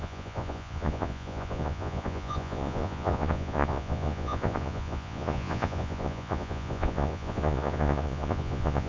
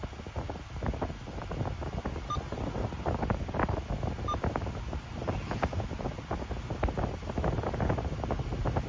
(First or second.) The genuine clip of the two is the second